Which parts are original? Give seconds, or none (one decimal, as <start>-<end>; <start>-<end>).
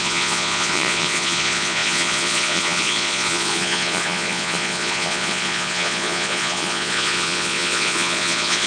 none